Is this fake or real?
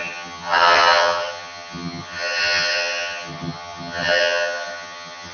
fake